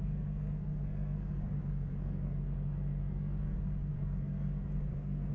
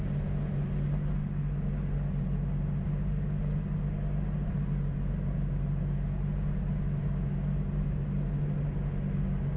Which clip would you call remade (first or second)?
first